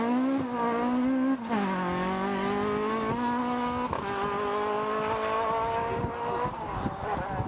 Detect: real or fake real